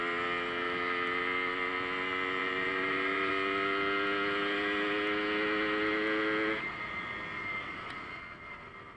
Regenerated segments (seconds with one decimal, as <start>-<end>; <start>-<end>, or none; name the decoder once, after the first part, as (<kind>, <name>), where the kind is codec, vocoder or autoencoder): 2.4-3.3 (vocoder, BigVGAN v2)